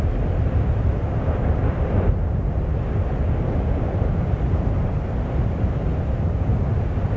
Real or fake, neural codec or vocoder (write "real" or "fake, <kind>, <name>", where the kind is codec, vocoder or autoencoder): real